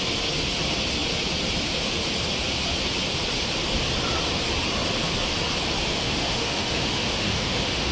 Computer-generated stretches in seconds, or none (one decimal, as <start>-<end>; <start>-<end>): 5.8-7.9

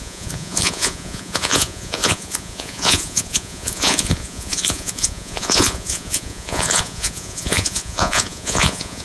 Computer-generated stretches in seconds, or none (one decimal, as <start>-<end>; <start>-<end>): 0.0-9.0

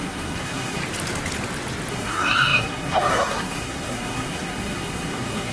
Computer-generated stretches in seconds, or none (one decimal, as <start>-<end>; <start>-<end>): 0.0-0.8; 1.9-5.5

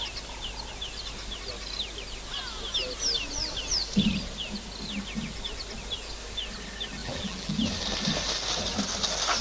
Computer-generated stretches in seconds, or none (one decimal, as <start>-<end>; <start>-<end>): 7.0-7.5

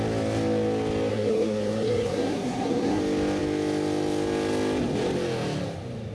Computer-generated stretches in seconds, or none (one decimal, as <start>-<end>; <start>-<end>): 1.1-3.0